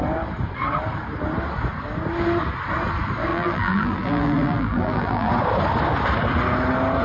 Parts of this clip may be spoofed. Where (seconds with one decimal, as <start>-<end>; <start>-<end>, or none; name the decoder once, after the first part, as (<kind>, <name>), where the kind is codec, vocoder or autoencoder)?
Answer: 3.3-5.3 (vocoder, BigVGAN v2)